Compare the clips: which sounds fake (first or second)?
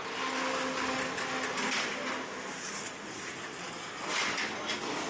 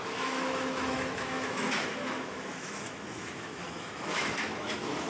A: second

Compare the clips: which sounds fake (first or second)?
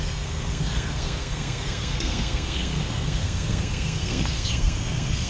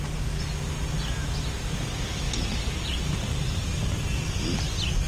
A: first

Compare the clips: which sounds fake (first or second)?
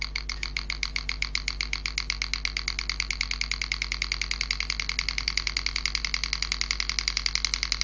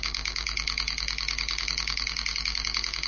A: second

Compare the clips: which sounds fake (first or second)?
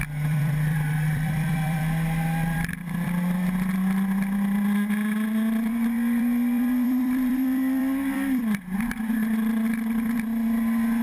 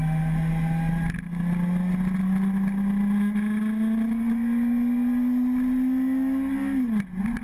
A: first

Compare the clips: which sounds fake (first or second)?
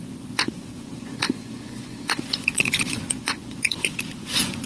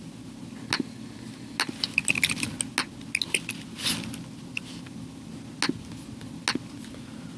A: first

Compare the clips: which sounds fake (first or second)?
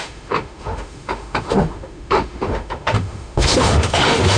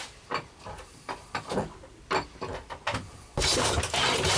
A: first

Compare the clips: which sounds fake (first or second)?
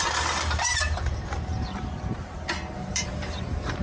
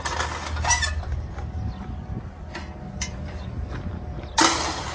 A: first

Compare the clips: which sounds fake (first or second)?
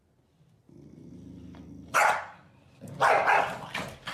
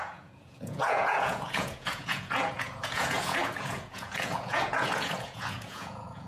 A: second